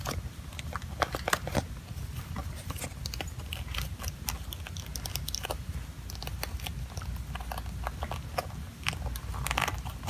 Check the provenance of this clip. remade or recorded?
recorded